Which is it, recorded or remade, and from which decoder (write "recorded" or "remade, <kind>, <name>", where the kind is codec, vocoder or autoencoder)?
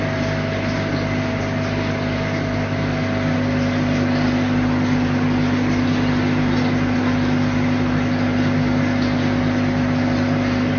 recorded